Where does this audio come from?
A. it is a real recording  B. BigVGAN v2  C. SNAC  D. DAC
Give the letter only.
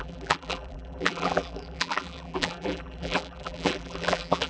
B